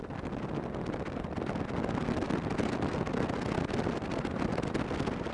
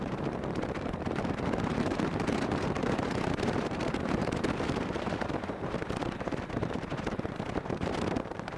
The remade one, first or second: second